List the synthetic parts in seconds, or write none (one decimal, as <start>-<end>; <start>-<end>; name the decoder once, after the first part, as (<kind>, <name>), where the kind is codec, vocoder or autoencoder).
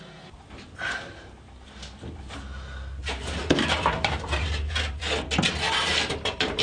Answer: 3.0-5.0 (vocoder, BigVGAN v2); 5.8-6.6